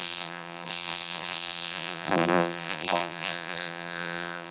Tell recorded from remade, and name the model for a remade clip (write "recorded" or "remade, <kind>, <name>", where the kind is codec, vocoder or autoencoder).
remade, vocoder, BigVGAN v2